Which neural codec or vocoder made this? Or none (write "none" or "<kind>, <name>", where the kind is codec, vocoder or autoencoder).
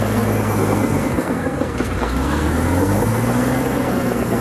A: codec, SNAC